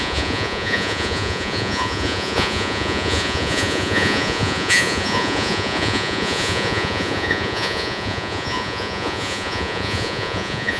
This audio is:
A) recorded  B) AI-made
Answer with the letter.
B